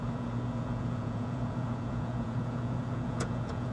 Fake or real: fake